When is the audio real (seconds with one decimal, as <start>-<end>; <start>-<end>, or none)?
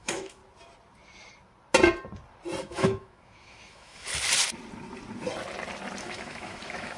0.4-2.6; 4.1-6.0